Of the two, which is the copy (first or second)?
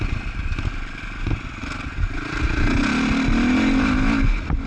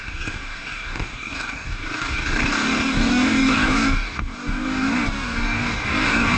second